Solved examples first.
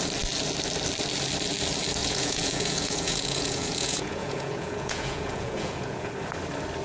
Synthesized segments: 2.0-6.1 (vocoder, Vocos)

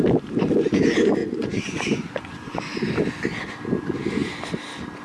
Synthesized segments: 1.2-2.6 (vocoder, Vocos)

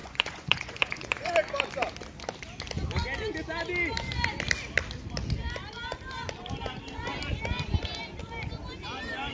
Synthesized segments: 0.0-1.3 (vocoder, Vocos)

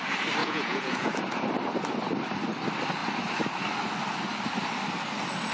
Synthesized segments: 0.4-1.1 (vocoder, Vocos)

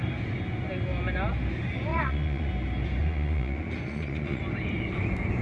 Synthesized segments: 1.9-2.5 (vocoder, Vocos); 3.0-4.4

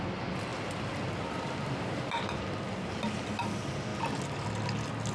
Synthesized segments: none